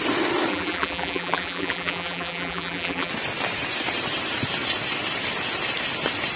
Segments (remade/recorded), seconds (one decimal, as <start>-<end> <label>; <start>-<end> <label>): 0.0-0.5 recorded; 0.5-3.1 remade; 3.1-6.4 recorded